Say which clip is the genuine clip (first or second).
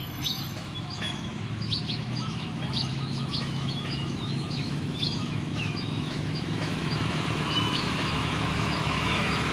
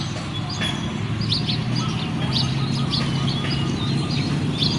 second